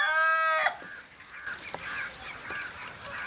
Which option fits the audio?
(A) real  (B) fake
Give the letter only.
A